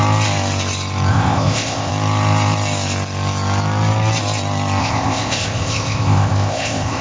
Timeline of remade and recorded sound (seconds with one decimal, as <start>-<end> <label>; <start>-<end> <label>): 0.0-1.1 recorded; 1.1-1.9 remade; 1.9-4.8 recorded; 4.8-7.0 remade